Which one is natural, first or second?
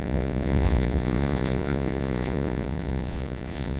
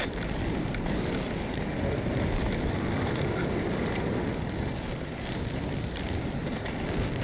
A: second